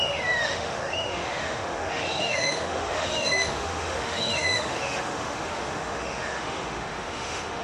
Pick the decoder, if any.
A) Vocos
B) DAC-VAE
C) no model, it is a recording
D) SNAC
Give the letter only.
B